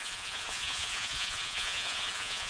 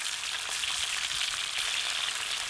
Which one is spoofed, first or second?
first